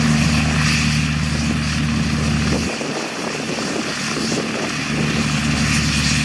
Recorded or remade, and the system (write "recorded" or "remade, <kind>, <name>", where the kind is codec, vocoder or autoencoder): recorded